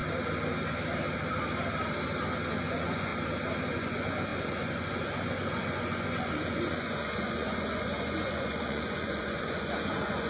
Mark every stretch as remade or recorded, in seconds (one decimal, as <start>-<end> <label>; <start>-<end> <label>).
0.0-2.6 recorded; 2.6-3.1 remade; 3.1-3.7 recorded; 3.7-10.3 remade

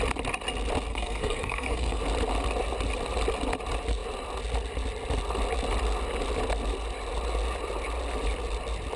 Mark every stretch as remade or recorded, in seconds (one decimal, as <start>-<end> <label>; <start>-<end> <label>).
0.0-0.9 recorded; 0.9-2.0 remade; 2.0-9.0 recorded

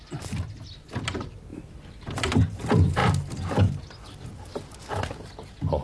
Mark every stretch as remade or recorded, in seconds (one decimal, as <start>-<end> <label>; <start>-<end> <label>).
0.0-1.5 recorded; 1.5-2.4 remade; 2.4-3.0 recorded; 3.0-3.8 remade; 3.8-5.8 recorded

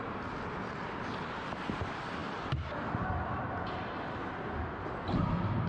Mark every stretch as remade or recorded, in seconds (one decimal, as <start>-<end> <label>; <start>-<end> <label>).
0.0-5.7 recorded

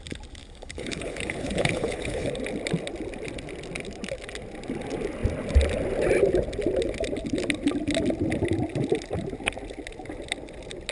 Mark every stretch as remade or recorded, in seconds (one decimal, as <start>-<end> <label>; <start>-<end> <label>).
0.0-0.4 recorded; 0.4-2.3 remade; 2.3-10.9 recorded

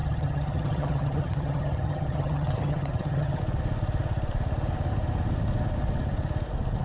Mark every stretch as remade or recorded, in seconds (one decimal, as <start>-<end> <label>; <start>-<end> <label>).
0.0-3.4 remade; 3.4-6.8 recorded